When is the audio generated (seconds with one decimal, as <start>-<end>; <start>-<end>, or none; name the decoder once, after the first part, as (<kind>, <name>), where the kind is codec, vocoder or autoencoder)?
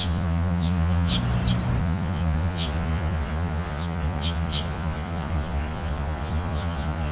0.0-1.1 (vocoder, Vocos); 1.8-7.1